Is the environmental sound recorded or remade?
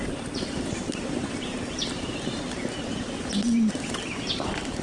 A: remade